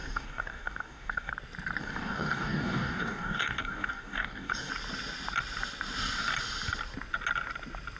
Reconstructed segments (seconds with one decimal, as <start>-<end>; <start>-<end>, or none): 0.0-1.3; 1.8-4.7